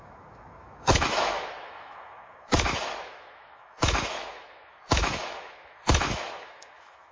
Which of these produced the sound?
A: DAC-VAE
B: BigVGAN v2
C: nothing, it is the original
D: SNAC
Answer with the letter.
A